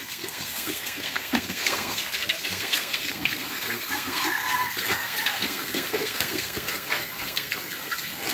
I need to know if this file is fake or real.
fake